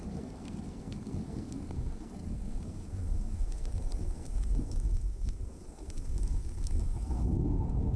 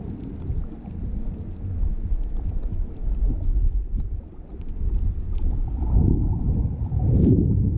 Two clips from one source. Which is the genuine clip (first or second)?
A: second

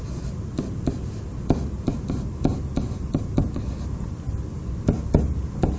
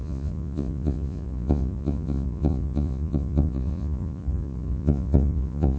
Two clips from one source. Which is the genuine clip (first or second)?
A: first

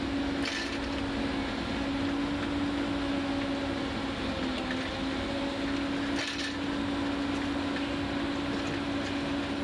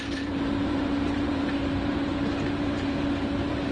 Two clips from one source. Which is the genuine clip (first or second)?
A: first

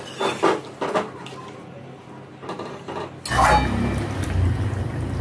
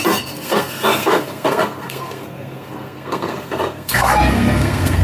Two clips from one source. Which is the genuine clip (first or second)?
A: first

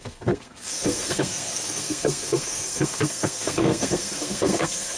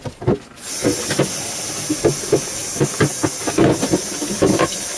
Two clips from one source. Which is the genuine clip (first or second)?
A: second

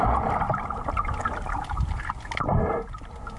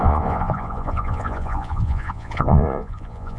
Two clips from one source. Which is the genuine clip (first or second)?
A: first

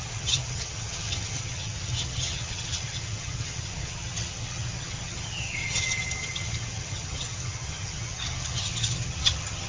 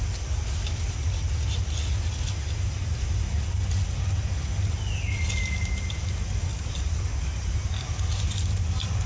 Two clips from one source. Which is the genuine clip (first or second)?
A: second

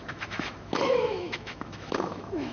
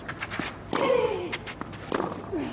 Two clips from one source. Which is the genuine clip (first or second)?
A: second